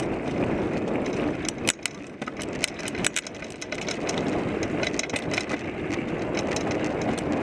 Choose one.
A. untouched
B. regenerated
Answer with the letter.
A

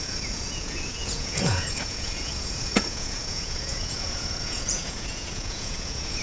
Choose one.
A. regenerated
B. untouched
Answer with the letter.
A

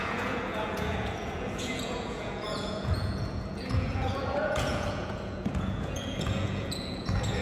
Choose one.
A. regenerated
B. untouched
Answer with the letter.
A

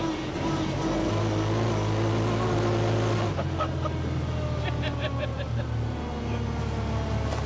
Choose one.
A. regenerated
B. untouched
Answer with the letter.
B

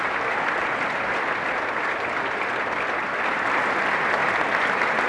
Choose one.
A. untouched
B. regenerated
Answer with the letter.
A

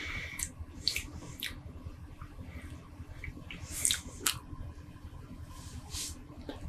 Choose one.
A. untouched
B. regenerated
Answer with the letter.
A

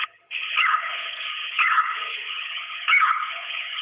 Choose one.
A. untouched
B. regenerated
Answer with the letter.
B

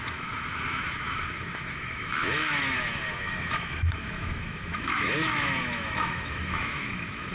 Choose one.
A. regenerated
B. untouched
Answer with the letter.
A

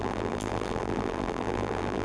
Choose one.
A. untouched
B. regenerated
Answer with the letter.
B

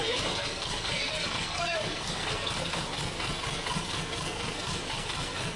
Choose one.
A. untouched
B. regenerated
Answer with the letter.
B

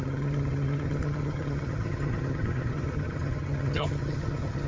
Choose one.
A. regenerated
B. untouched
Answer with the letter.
A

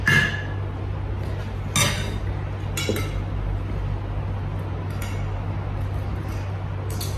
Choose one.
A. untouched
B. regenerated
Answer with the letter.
A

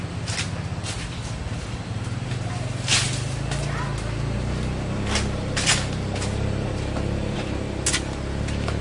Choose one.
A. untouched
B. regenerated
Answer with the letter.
A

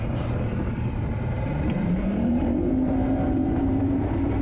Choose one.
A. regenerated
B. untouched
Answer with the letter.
A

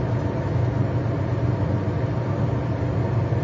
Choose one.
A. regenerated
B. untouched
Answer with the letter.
B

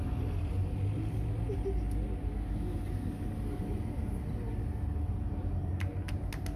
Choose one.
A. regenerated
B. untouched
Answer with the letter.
B